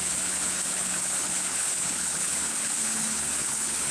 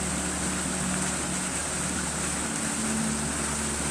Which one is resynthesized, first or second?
first